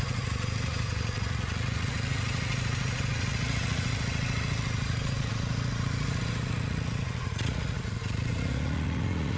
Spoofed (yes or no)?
yes